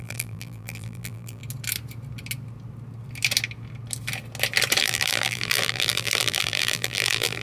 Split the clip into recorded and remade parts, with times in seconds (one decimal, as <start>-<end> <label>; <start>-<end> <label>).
0.0-1.4 remade; 1.4-4.8 recorded; 4.8-7.4 remade